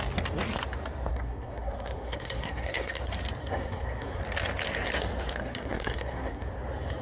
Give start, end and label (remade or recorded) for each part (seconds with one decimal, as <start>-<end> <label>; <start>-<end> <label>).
0.0-1.1 recorded; 1.1-3.0 remade; 3.0-3.4 recorded; 3.4-4.2 remade; 4.2-5.4 recorded; 5.4-6.5 remade; 6.5-7.0 recorded